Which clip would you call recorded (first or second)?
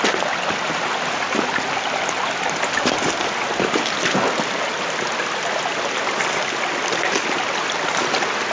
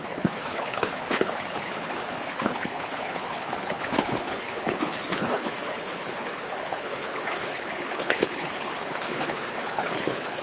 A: first